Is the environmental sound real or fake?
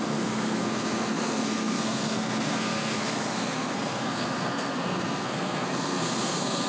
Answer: fake